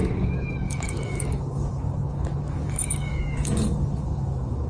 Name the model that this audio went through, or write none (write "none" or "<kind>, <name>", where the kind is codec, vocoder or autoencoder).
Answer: codec, DAC